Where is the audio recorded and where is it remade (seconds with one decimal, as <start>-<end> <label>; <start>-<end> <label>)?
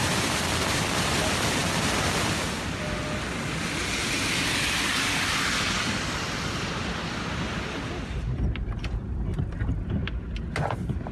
0.0-1.6 remade; 1.6-4.0 recorded; 4.0-9.3 remade; 9.3-11.1 recorded